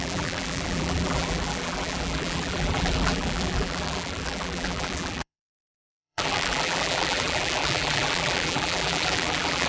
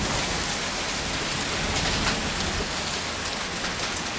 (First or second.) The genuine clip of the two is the second